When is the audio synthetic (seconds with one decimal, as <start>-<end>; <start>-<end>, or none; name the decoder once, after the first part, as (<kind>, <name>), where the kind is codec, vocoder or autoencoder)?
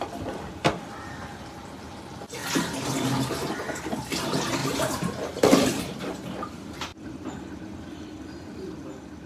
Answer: 4.6-5.8 (vocoder, BigVGAN v2); 6.9-7.9